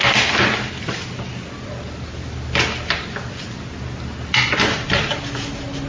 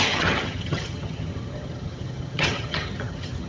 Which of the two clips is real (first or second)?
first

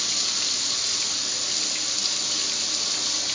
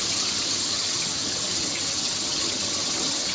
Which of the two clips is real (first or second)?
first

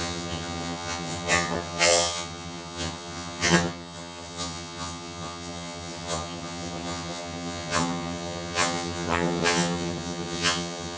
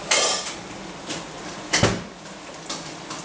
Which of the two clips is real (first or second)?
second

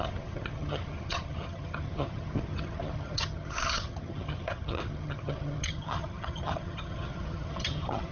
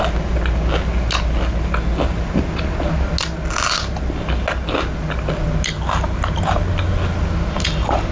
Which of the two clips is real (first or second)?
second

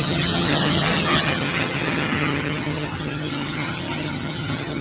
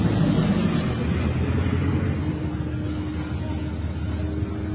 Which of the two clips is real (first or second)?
second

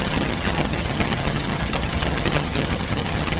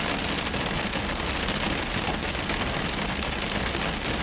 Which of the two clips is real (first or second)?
second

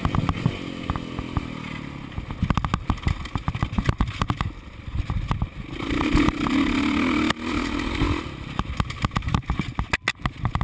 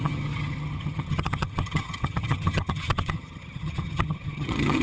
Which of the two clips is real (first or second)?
first